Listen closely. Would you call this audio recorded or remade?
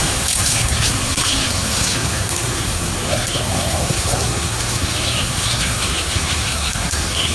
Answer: remade